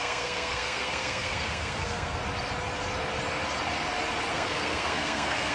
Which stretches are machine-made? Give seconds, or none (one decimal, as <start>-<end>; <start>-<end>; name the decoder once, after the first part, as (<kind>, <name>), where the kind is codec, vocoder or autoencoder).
0.0-2.2 (codec, SNAC); 4.3-5.5